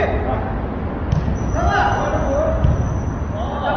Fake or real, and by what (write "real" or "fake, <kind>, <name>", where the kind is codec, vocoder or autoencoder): real